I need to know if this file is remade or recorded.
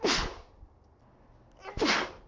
recorded